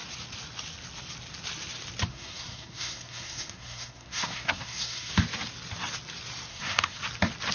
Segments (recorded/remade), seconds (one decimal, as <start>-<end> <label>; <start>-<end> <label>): 0.0-2.1 recorded; 2.1-5.1 remade; 5.1-6.5 recorded; 6.5-7.0 remade; 7.0-7.5 recorded